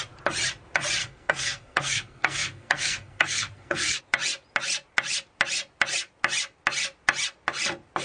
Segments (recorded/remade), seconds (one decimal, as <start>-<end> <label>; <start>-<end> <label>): 0.0-1.0 recorded; 1.0-4.0 remade; 4.0-8.0 recorded